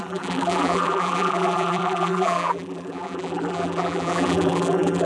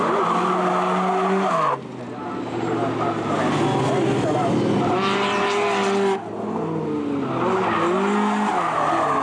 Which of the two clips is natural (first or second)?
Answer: second